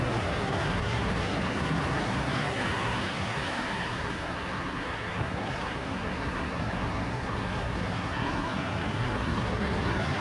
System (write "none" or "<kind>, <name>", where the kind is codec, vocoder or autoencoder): codec, SNAC